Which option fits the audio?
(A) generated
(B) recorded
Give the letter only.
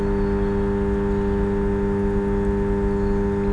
B